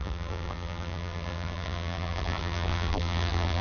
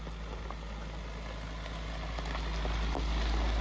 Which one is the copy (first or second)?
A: first